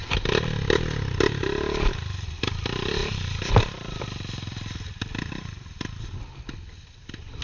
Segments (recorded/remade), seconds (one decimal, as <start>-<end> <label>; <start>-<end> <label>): 0.0-1.9 recorded; 1.9-7.4 remade